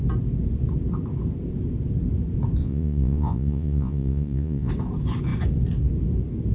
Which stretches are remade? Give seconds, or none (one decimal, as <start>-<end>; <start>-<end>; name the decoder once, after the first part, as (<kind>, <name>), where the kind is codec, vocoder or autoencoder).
2.6-4.7 (vocoder, Vocos)